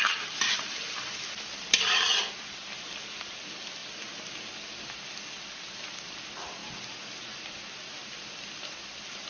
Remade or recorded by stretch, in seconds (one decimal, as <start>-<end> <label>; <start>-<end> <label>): 0.0-9.3 recorded